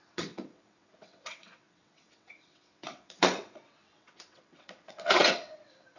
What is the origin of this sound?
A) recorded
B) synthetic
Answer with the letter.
B